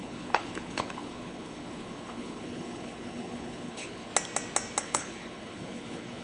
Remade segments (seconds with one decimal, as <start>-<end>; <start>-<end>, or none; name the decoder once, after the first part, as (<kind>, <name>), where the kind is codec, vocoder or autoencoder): 0.0-4.1 (codec, HILCodec); 4.8-6.2